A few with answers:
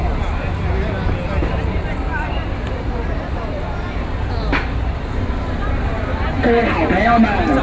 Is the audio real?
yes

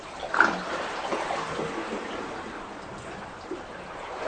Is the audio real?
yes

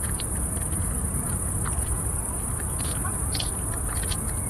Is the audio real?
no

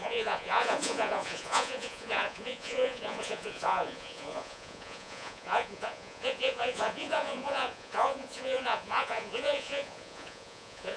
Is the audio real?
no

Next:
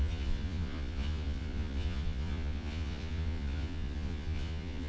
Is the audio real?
no